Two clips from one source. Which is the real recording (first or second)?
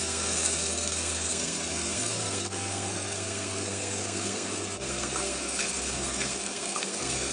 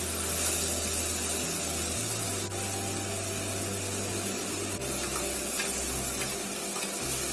second